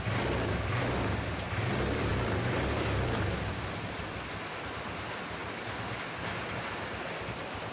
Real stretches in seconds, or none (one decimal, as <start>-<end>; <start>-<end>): 0.0-7.7